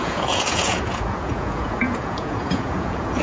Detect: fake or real fake